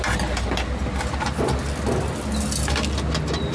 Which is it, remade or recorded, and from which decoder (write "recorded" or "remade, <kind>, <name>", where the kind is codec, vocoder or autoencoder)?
recorded